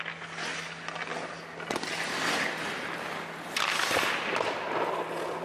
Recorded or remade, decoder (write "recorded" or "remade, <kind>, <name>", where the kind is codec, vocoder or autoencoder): recorded